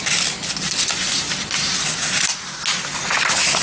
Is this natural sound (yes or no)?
yes